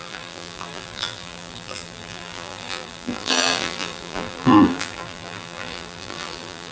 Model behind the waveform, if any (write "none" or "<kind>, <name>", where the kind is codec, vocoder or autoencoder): vocoder, BigVGAN v2